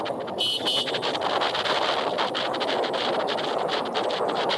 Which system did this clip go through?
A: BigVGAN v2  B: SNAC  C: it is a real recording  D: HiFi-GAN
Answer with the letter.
C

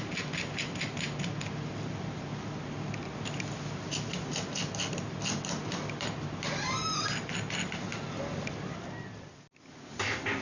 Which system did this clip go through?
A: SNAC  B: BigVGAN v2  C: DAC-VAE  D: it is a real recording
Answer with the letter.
D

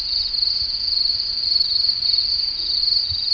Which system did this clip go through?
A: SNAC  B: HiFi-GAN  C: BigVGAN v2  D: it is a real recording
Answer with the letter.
D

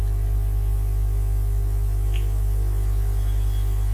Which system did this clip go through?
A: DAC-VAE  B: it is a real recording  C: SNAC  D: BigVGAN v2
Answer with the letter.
B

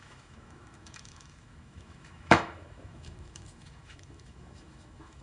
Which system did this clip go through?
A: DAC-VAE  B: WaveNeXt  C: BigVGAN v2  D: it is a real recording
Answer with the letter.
A